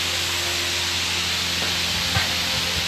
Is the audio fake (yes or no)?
no